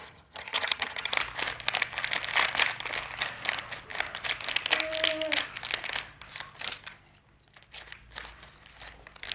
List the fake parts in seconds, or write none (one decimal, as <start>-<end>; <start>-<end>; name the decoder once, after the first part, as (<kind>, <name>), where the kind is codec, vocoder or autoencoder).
0.0-1.1 (vocoder, HiFi-GAN)